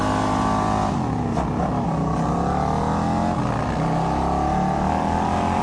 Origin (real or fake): real